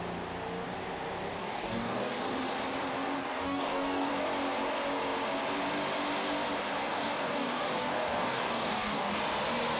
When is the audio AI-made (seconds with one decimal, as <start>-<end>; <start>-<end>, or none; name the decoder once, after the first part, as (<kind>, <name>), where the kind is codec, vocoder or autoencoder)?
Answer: 1.4-2.2 (codec, DAC); 3.2-4.1; 6.8-9.2